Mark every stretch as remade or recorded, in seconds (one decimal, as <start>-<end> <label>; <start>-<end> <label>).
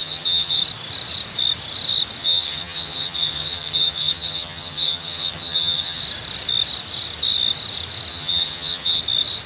0.0-0.6 remade; 0.6-2.2 recorded; 2.2-6.0 remade; 6.0-8.1 recorded; 8.1-9.0 remade; 9.0-9.5 recorded